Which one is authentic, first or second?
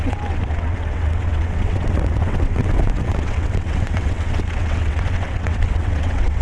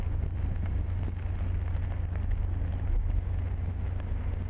second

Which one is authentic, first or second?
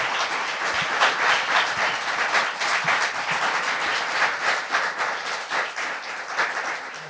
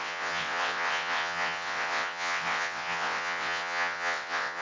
first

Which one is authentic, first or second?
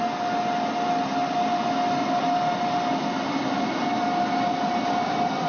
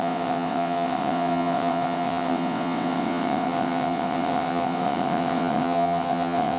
first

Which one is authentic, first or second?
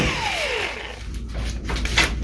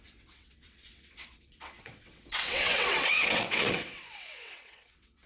first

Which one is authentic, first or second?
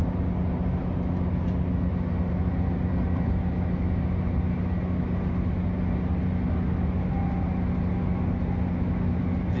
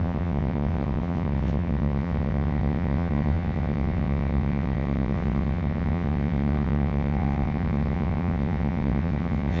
first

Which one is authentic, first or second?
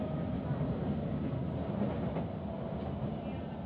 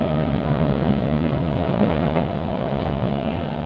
first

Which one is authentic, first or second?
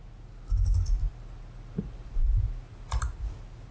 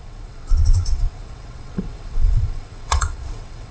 first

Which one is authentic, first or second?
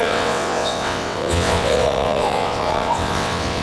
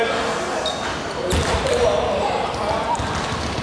second